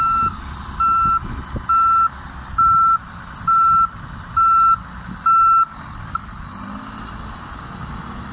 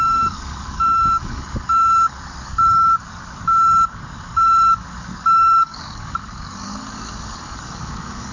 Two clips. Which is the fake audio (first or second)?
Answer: second